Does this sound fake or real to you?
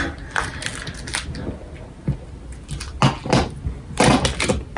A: real